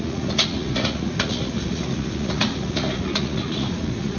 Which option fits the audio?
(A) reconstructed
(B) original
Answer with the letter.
A